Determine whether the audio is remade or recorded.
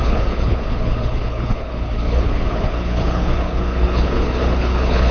remade